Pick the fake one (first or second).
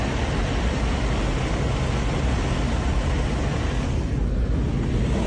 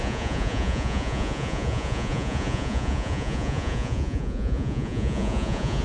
second